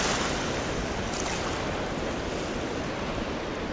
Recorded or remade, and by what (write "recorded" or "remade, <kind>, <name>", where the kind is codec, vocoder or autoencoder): recorded